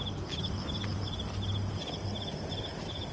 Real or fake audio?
real